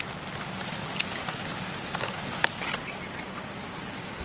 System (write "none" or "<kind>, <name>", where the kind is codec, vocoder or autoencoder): none